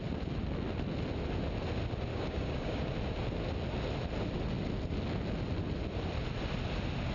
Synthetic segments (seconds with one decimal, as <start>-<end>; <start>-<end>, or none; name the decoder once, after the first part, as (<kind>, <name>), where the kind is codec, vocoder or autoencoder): 2.1-2.9 (codec, DAC)